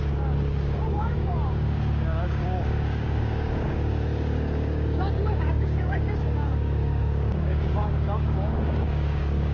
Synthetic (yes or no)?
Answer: yes